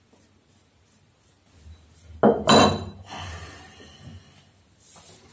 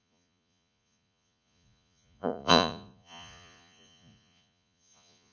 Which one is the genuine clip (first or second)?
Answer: first